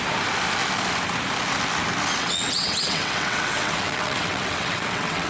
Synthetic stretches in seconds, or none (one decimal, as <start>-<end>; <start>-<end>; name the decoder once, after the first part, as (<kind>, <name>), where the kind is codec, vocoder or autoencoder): 2.2-5.3 (vocoder, WaveNeXt)